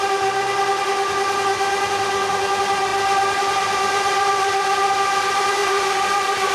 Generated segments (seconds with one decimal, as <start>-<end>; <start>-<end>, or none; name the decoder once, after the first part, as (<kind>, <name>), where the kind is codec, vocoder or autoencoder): none